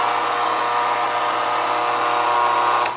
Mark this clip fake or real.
real